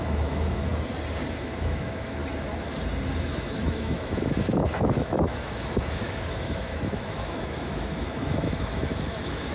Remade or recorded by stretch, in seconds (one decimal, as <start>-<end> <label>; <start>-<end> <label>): 0.0-0.7 remade; 0.7-1.4 recorded; 1.4-2.2 remade; 2.2-3.2 recorded; 3.2-9.5 remade